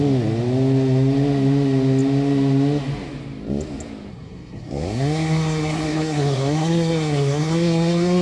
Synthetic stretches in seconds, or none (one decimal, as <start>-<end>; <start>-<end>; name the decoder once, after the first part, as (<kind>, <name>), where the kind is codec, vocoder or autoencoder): 4.1-8.2 (codec, SNAC)